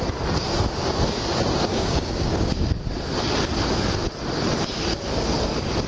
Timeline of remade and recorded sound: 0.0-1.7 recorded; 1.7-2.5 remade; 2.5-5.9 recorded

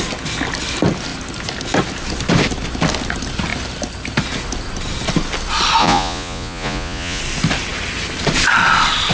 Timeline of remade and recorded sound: 0.0-5.8 recorded; 5.8-7.2 remade; 7.2-9.1 recorded

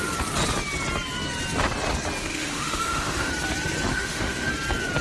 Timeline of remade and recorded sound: 0.0-2.2 recorded; 2.2-3.3 remade; 3.3-3.9 recorded; 3.9-4.5 remade; 4.5-5.0 recorded

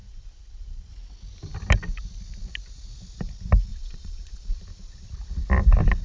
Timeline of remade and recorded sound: 0.0-0.9 remade; 0.9-3.7 recorded; 3.7-4.5 remade; 4.5-6.0 recorded